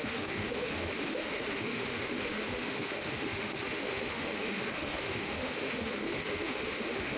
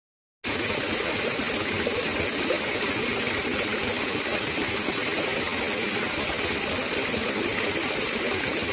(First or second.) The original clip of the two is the second